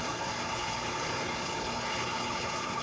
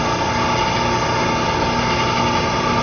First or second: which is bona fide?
second